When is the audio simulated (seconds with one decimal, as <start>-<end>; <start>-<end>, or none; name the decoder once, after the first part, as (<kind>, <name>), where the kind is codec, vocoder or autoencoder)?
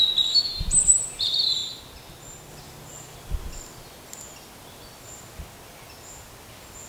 none